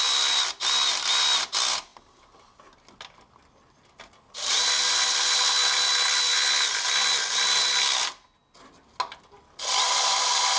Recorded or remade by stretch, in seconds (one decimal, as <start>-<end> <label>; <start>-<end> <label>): 0.0-10.6 recorded